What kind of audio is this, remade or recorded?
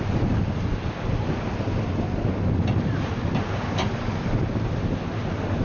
recorded